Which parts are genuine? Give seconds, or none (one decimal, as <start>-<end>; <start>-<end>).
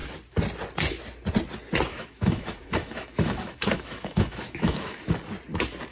0.0-1.9; 5.1-5.9